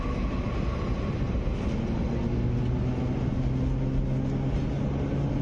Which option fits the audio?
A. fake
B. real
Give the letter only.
B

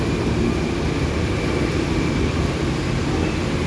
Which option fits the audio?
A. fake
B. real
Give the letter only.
B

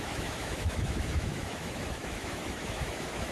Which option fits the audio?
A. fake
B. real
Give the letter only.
A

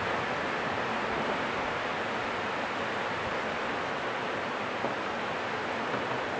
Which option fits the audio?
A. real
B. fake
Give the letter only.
A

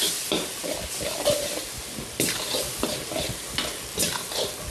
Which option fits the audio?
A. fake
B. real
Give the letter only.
B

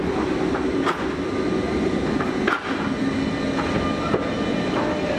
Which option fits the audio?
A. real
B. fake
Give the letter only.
A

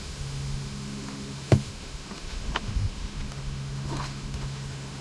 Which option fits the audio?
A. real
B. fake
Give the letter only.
B